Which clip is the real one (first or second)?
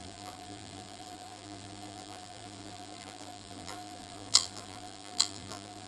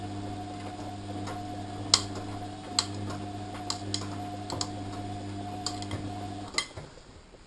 second